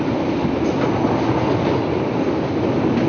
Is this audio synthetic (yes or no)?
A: no